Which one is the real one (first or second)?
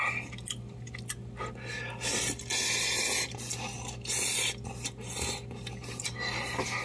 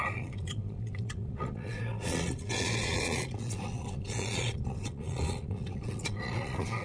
first